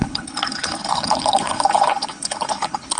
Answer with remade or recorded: remade